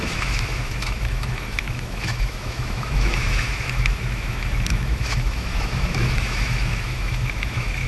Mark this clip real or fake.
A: fake